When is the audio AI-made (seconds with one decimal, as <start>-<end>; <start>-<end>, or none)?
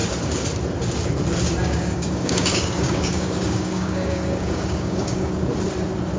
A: 1.6-5.3